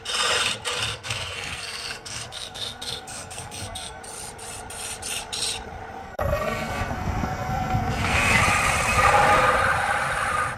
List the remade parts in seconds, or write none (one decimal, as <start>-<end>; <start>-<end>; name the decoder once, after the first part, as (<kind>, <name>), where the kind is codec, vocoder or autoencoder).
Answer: 0.9-4.0 (codec, SNAC); 6.0-8.4